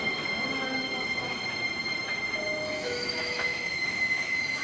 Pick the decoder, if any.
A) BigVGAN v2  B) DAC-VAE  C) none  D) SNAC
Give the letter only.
B